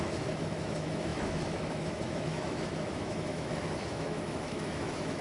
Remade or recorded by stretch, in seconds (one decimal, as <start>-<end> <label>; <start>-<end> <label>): 0.0-5.2 remade

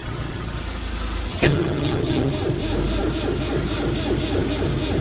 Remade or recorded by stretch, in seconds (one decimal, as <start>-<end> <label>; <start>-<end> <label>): 0.0-0.6 remade; 0.6-1.3 recorded; 1.3-2.3 remade; 2.3-5.0 recorded

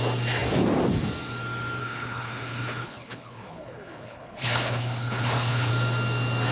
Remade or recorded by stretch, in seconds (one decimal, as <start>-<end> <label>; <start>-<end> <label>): 0.0-1.8 recorded; 1.8-5.7 remade; 5.7-6.5 recorded

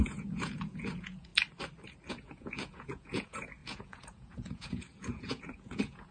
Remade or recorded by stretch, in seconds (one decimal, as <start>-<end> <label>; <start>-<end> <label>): 0.0-1.3 remade; 1.3-2.1 recorded; 2.1-6.1 remade

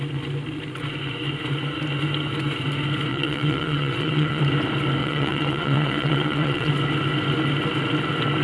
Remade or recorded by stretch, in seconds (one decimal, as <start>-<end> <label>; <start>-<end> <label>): 0.0-3.1 recorded; 3.1-4.4 remade; 4.4-5.0 recorded; 5.0-6.7 remade; 6.7-8.4 recorded

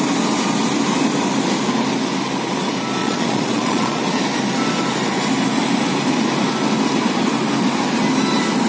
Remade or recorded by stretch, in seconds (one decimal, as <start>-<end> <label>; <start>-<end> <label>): 0.0-3.0 recorded; 3.0-4.0 remade; 4.0-8.7 recorded

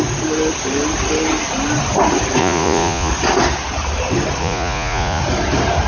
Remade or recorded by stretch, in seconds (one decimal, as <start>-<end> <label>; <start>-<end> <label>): 0.0-2.4 recorded; 2.4-3.1 remade; 3.1-4.4 recorded; 4.4-5.2 remade; 5.2-5.9 recorded